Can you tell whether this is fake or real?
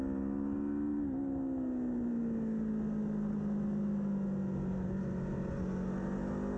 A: real